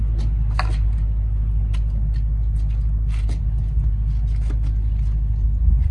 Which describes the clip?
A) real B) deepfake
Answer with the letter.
A